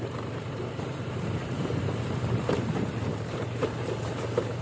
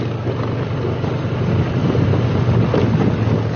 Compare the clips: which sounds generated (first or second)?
first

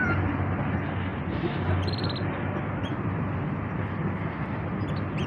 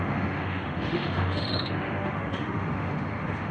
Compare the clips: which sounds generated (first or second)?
second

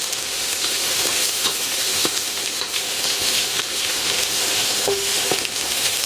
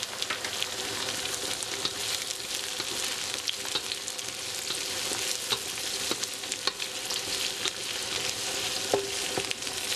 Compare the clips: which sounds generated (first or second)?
first